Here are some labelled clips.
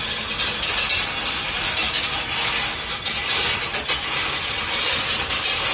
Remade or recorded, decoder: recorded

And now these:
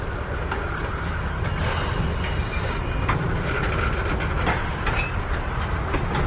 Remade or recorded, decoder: recorded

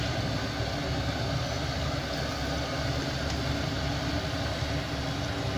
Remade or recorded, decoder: recorded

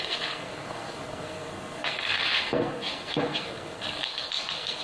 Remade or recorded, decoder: remade, codec, SNAC